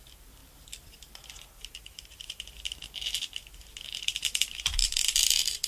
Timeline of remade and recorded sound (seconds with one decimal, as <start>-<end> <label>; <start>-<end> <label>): 0.0-0.4 remade; 0.4-1.8 recorded; 1.8-5.7 remade